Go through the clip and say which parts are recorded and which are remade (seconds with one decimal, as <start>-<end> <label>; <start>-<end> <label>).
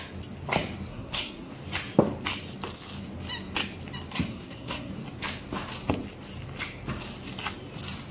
0.0-0.9 recorded; 0.9-1.5 remade; 1.5-4.3 recorded; 4.3-4.9 remade; 4.9-8.1 recorded